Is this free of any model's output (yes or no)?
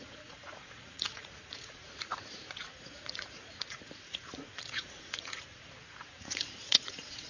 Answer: no